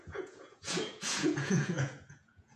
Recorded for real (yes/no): no